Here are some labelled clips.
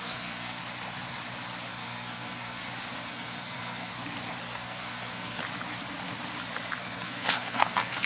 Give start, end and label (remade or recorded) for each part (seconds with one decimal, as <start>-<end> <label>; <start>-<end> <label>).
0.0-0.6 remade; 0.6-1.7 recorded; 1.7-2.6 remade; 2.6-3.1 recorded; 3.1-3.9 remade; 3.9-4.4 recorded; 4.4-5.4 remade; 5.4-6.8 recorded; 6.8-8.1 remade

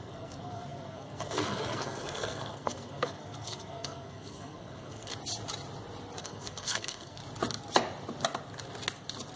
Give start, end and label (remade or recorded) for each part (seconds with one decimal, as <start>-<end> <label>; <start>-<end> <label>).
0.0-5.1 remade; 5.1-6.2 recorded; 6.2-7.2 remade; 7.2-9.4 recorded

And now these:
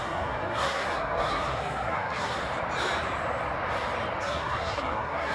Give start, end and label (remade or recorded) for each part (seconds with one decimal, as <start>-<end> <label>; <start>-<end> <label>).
0.0-2.4 remade; 2.4-4.2 recorded; 4.2-5.3 remade

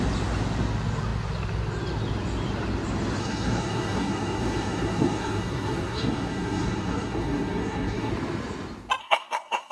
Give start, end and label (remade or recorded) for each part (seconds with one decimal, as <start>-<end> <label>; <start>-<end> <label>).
0.0-3.2 recorded; 3.2-8.1 remade; 8.1-9.0 recorded; 9.0-9.7 remade

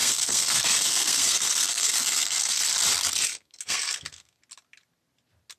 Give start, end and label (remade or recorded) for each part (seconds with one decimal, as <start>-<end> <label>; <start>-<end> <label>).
0.0-2.6 remade; 2.6-3.3 recorded; 3.3-4.4 remade; 4.4-5.6 recorded

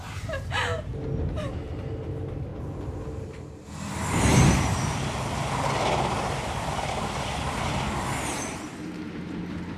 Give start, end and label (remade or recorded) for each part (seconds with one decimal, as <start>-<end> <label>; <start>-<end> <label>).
0.0-9.8 recorded

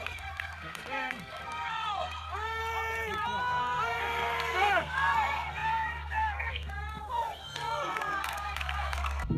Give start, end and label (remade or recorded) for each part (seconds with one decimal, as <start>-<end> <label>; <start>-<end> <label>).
0.0-2.6 remade; 2.6-3.4 recorded; 3.4-9.4 remade